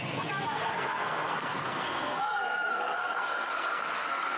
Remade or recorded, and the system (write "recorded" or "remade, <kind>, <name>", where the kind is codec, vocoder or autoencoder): remade, codec, SNAC